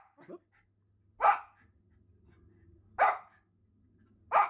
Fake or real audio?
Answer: real